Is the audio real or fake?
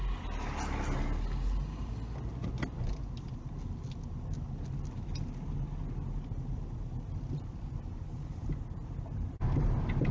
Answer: real